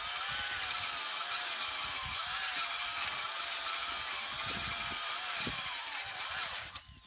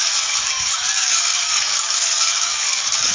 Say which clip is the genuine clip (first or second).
first